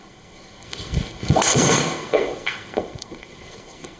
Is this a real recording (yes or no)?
no